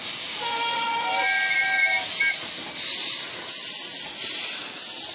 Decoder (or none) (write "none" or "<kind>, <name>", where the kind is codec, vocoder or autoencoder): none